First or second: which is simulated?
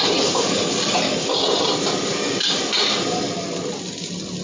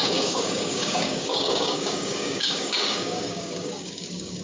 second